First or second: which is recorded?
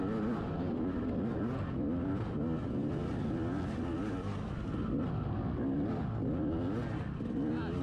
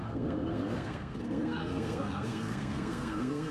first